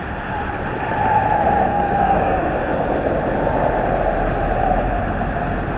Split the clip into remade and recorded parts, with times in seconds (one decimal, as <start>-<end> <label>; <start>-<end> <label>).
0.0-1.7 recorded; 1.7-2.7 remade; 2.7-5.8 recorded